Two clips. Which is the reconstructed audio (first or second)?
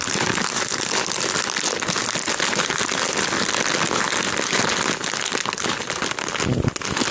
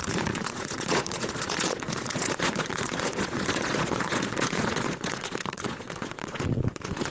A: second